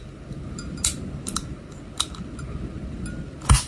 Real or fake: real